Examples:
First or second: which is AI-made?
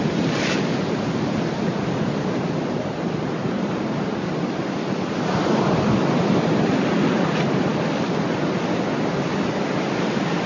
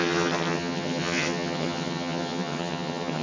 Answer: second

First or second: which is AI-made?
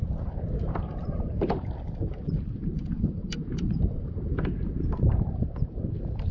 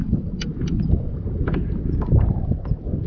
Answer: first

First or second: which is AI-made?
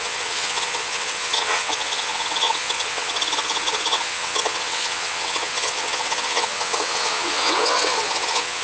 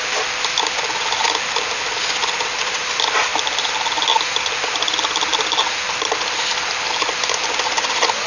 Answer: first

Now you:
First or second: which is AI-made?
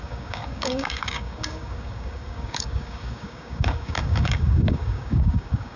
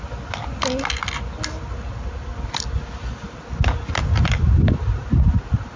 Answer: first